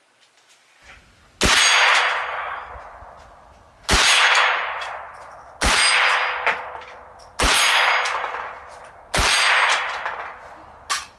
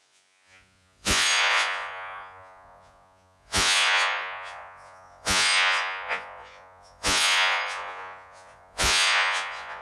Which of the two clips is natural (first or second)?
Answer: first